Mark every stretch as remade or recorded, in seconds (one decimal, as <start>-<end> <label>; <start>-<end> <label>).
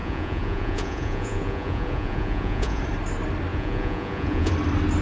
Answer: 0.0-2.8 remade; 2.8-3.5 recorded; 3.5-4.5 remade; 4.5-5.0 recorded